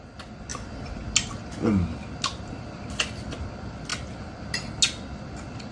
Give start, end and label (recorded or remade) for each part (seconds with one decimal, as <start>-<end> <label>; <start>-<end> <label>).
0.0-5.7 recorded